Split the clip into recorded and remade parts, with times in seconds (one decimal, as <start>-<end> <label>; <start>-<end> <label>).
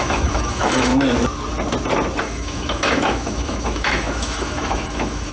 0.0-0.9 remade; 0.9-2.2 recorded; 2.2-5.3 remade